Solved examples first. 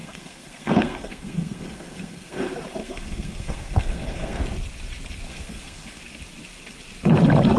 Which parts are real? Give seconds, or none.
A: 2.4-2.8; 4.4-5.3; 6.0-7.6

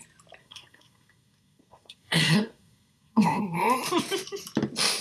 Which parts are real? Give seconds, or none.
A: 0.0-0.4; 3.4-5.0

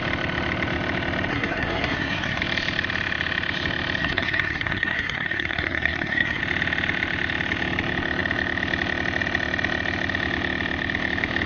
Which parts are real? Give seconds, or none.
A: 0.0-1.3; 2.4-4.0; 6.4-11.5

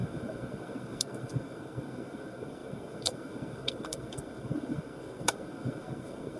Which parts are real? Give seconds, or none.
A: none

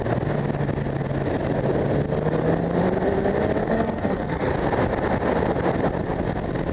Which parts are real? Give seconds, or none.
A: 0.0-3.6; 4.5-6.7

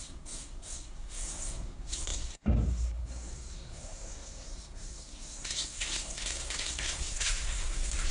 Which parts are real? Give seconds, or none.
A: none